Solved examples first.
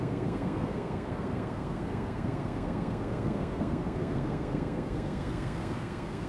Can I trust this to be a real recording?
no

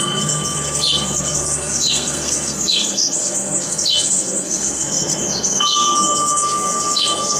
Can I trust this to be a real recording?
no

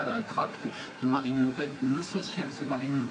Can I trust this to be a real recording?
no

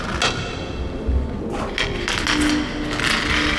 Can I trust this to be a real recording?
yes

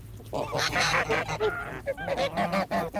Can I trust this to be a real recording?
yes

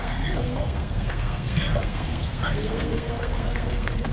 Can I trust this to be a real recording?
no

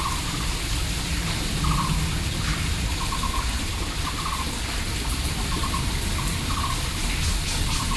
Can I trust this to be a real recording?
yes